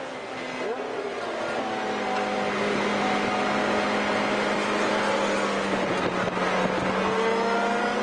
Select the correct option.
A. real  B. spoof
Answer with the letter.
A